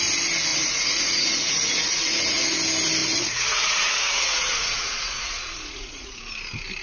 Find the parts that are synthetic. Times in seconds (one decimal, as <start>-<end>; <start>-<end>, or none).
0.5-2.5; 3.0-6.2